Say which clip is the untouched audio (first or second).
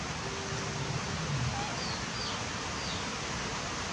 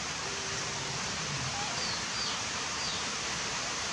first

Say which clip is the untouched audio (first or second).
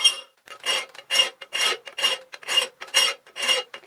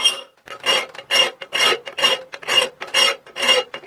second